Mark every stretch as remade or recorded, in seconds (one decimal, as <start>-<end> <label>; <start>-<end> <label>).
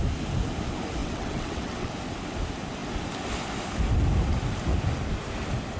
0.0-1.0 recorded; 1.0-1.9 remade; 1.9-5.8 recorded